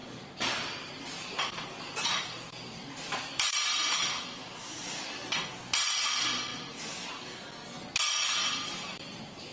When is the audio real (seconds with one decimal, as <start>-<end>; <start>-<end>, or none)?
4.2-9.5